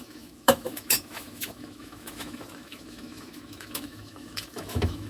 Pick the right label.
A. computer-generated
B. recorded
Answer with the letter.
A